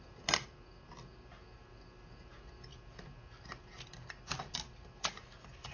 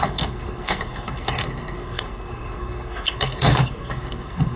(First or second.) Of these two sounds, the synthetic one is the second